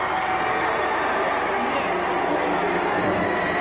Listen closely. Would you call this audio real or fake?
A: real